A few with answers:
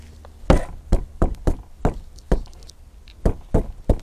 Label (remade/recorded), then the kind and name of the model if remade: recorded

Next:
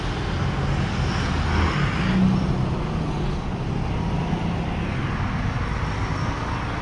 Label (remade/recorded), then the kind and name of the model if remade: recorded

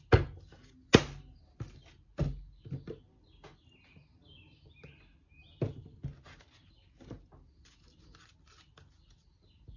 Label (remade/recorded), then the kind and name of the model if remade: recorded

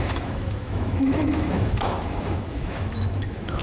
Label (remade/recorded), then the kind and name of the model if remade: remade, autoencoder, DAC-VAE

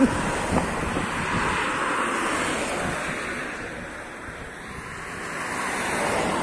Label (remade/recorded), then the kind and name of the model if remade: recorded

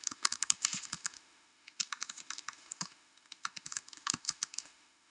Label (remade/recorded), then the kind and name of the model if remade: remade, autoencoder, DAC-VAE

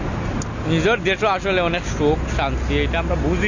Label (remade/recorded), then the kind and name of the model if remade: recorded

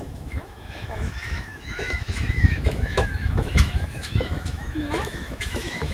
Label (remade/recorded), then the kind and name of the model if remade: remade, autoencoder, DAC-VAE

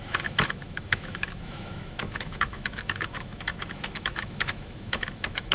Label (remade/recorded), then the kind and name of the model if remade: remade, autoencoder, DAC-VAE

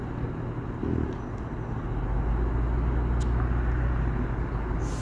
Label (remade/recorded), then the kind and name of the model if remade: recorded